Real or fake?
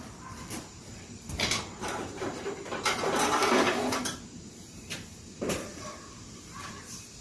fake